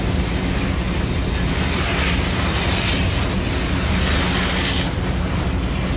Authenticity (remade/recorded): recorded